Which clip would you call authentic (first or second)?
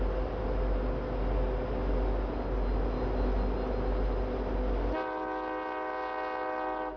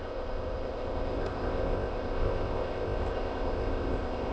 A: first